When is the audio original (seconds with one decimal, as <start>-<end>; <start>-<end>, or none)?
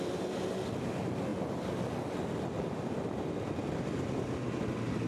0.0-5.1